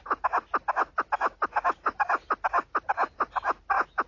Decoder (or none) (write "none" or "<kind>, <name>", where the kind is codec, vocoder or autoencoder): none